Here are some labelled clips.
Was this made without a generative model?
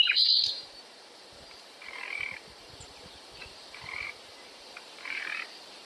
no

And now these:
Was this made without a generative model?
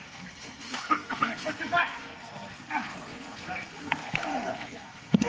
no